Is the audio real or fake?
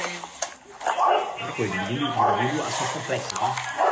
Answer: real